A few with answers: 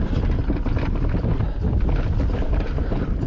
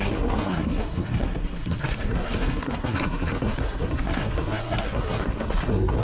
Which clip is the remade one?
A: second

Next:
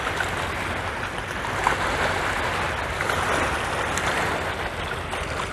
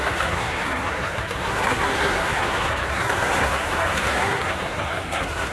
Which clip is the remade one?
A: second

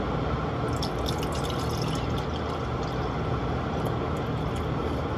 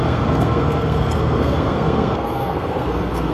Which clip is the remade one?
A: second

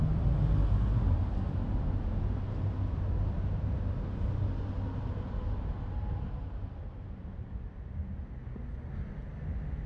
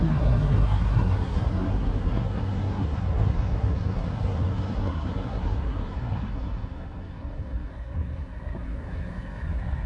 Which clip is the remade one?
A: second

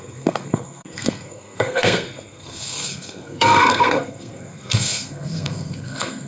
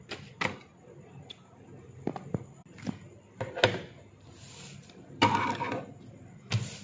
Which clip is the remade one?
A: first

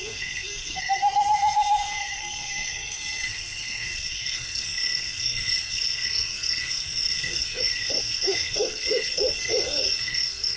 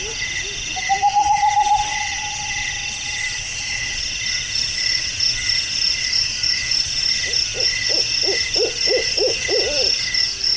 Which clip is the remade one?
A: first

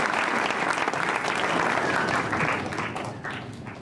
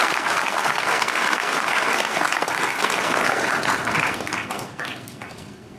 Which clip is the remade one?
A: second